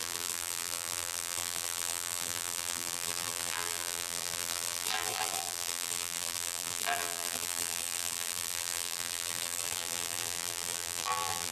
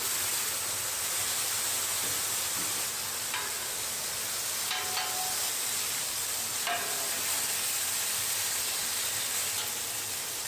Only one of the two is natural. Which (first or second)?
second